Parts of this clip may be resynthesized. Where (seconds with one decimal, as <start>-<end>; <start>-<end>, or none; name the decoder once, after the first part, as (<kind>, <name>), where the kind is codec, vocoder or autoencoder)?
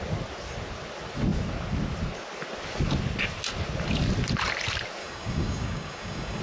5.0-6.4 (codec, DAC)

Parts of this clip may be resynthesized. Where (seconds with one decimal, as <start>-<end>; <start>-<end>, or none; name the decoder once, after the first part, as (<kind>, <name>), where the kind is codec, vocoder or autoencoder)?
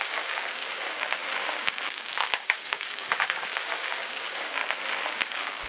0.0-4.6 (codec, DAC); 5.1-5.7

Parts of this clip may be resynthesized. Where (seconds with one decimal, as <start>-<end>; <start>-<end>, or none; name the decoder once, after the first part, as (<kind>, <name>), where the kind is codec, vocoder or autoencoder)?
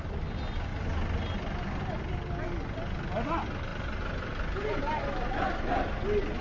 none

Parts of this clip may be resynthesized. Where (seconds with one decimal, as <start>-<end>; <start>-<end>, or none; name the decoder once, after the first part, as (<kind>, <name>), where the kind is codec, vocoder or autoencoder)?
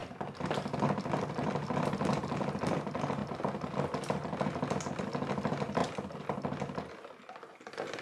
none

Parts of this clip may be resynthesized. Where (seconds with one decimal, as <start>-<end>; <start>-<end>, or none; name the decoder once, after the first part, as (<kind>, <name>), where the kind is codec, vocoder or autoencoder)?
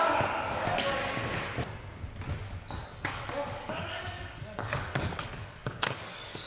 0.0-1.2 (codec, DAC); 2.4-6.5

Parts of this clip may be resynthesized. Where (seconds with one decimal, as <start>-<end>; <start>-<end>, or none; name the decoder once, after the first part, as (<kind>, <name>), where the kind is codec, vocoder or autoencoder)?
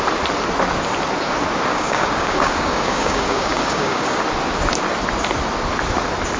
1.7-4.2 (codec, DAC)